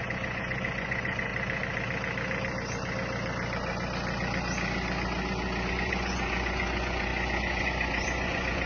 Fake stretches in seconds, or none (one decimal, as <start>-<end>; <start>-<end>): 0.0-1.3; 5.7-8.7